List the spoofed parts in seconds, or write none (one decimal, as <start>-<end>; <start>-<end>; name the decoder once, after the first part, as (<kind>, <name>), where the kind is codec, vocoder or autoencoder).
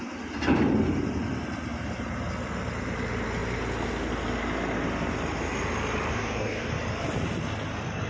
6.1-6.7 (codec, DAC)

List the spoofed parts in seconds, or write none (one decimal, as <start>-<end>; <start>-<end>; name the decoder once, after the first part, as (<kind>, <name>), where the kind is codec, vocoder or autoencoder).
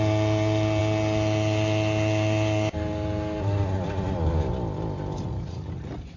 none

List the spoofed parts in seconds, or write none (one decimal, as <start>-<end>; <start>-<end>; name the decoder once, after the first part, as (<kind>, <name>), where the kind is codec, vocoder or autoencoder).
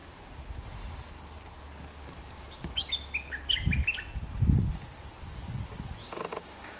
1.9-2.9 (codec, DAC); 6.0-6.8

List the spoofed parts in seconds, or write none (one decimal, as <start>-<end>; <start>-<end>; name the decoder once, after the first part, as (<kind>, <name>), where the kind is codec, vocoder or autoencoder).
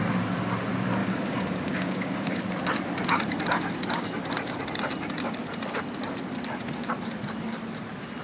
1.0-2.4 (codec, DAC)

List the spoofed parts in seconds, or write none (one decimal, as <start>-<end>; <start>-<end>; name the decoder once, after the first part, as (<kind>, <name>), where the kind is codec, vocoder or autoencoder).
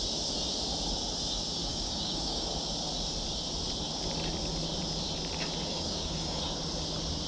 1.7-2.5 (codec, DAC); 5.7-6.4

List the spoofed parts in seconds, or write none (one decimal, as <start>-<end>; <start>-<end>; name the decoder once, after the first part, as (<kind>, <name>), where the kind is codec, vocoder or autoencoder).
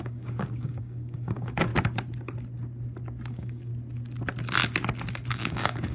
0.0-1.7 (codec, DAC); 3.3-3.7; 5.3-5.9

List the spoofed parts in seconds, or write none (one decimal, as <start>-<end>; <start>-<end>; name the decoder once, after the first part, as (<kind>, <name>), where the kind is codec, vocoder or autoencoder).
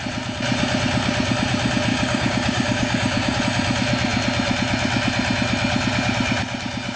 1.9-3.4 (codec, DAC)